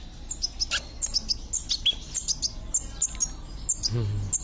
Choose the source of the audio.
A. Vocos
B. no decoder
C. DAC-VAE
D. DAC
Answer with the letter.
B